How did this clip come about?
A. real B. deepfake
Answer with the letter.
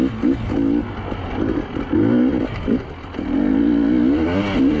A